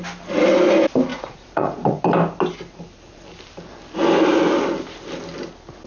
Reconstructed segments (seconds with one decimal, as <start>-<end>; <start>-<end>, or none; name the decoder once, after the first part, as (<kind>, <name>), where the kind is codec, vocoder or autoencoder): 1.1-2.0 (vocoder, Vocos)